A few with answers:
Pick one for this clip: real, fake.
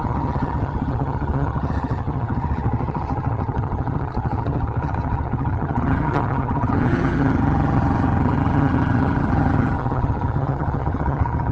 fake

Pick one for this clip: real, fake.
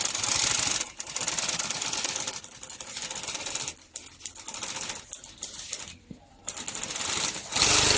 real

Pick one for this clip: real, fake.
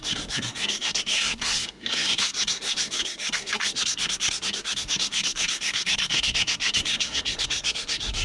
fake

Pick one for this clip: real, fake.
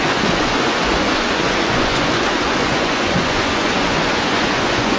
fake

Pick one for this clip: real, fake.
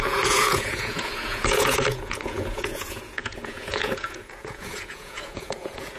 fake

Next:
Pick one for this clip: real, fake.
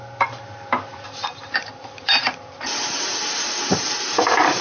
fake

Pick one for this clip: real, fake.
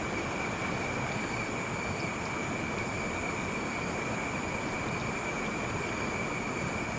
real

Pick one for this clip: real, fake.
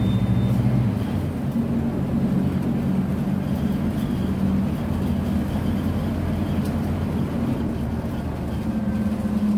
real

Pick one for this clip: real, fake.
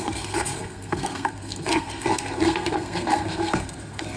fake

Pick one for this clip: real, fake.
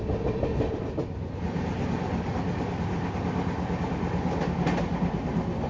real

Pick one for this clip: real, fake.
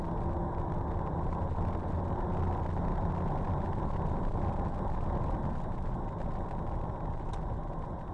real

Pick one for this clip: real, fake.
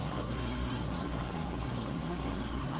fake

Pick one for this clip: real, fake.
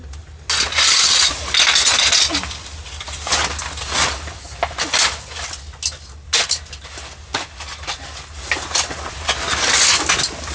real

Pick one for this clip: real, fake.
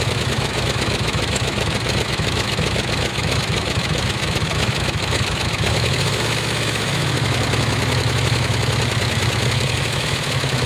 fake